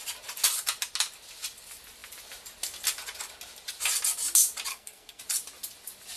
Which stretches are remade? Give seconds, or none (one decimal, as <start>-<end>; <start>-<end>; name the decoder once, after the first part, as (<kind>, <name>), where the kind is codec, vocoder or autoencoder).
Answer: 4.7-5.2 (codec, SNAC)